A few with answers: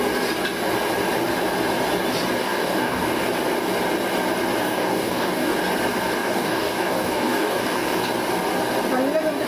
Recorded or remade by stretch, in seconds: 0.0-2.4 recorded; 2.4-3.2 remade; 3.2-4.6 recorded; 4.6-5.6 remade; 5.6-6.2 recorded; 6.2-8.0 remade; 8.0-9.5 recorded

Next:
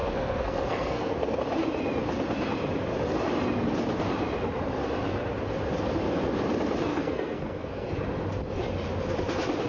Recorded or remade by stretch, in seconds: 0.0-1.4 remade; 1.4-6.9 recorded; 6.9-7.9 remade; 7.9-9.7 recorded

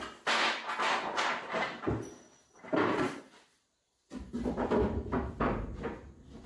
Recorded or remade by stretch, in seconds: 0.0-0.8 recorded; 0.8-4.7 remade; 4.7-6.5 recorded

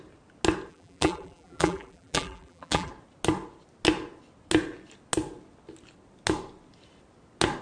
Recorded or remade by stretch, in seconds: 0.0-0.7 recorded; 0.7-2.9 remade; 2.9-7.6 recorded

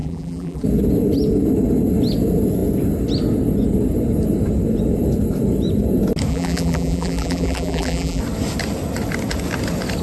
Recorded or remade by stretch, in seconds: 0.0-0.6 remade; 0.6-6.3 recorded; 6.3-8.2 remade; 8.2-10.0 recorded

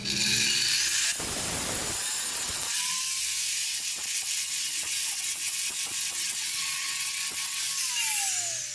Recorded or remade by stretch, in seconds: 0.0-2.3 recorded; 2.3-3.0 remade; 3.0-3.7 recorded; 3.7-7.6 remade; 7.6-8.7 recorded

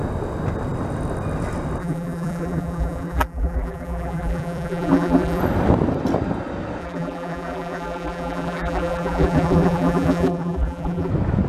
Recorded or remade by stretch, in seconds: 0.0-1.8 recorded; 1.8-5.4 remade; 5.4-6.8 recorded; 6.8-11.1 remade; 11.1-11.5 recorded

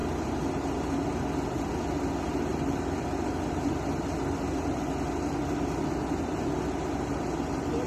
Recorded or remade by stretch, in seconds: 0.0-7.9 recorded